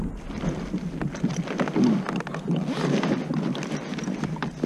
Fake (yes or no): no